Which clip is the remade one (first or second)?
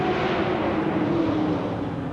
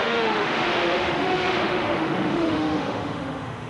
second